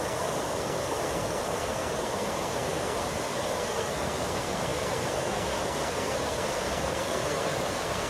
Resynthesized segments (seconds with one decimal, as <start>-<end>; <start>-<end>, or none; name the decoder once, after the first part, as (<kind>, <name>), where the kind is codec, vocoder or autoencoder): 0.0-8.1 (codec, SNAC)